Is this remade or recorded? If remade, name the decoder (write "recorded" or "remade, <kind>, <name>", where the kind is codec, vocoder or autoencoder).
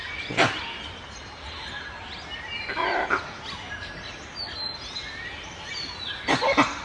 recorded